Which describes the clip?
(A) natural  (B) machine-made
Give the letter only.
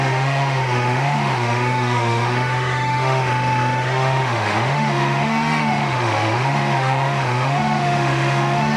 B